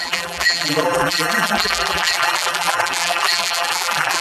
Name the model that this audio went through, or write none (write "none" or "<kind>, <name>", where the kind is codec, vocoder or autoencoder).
vocoder, BigVGAN v2